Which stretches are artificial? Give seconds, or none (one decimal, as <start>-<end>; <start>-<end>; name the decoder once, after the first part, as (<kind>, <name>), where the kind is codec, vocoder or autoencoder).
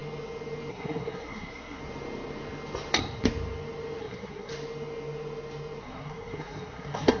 0.7-1.8 (codec, SNAC); 4.0-4.5; 5.8-7.2